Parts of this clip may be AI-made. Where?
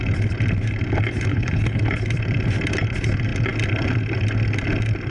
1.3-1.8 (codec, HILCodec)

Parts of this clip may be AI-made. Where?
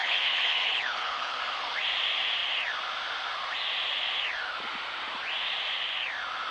0.0-1.4 (codec, HILCodec)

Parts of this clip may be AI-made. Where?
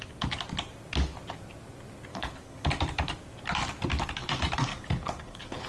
2.1-2.7 (codec, HILCodec); 4.7-5.7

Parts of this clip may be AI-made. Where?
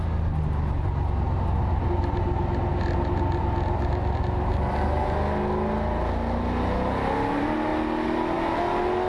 none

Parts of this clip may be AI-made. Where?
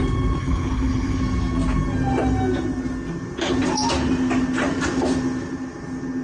0.4-1.2 (codec, HILCodec)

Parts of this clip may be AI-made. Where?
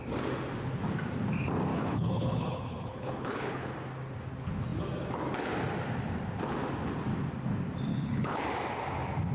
1.7-3.8 (codec, HILCodec); 7.9-8.4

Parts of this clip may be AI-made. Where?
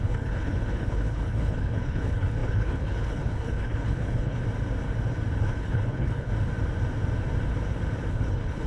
0.0-4.4 (codec, HILCodec); 5.4-6.3; 8.1-8.7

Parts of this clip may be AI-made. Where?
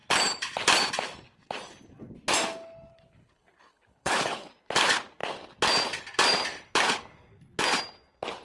2.9-4.5 (codec, HILCodec)